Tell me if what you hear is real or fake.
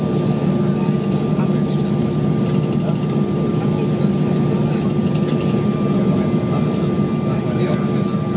real